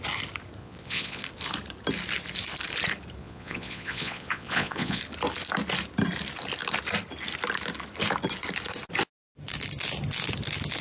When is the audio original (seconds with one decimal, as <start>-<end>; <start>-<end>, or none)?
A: 0.0-0.6; 1.2-3.2; 5.0-10.8